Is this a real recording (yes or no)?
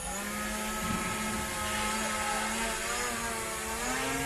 yes